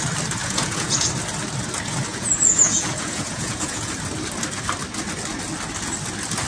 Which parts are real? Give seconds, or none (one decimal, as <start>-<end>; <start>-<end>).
0.0-0.4; 1.1-2.1; 3.9-6.5

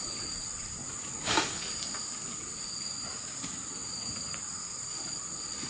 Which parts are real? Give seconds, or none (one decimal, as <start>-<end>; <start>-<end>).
0.0-0.8; 1.3-3.8; 4.6-5.7